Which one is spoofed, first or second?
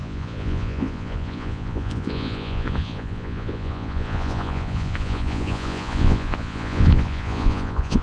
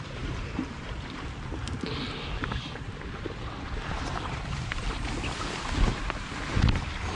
first